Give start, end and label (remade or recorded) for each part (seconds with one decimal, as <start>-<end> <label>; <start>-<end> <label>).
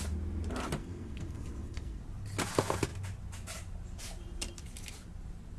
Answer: 0.0-0.8 recorded; 0.8-2.0 remade; 2.0-5.6 recorded